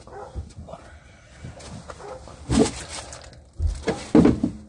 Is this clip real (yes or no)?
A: yes